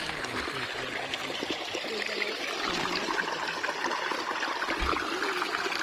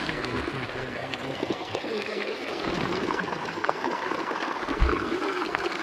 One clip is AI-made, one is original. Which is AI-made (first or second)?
second